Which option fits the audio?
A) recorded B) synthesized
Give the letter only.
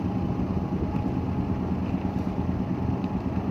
A